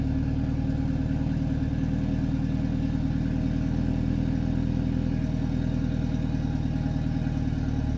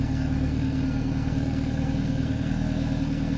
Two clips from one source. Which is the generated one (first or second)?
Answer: second